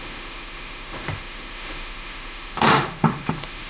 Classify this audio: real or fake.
fake